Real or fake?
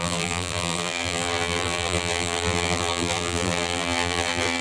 fake